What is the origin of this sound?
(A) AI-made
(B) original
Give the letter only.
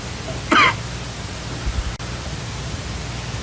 B